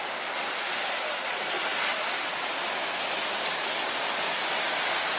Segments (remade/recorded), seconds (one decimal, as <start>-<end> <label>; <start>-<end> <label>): 0.0-0.7 remade; 0.7-5.2 recorded